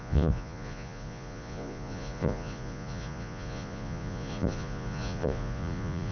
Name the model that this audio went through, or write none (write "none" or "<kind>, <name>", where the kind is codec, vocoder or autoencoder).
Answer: vocoder, Vocos